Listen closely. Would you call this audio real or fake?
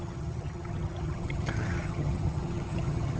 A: fake